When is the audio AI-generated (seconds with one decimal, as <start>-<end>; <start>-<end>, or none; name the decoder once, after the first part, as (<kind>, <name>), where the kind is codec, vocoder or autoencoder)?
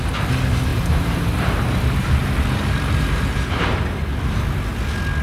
0.7-3.8 (vocoder, BigVGAN v2)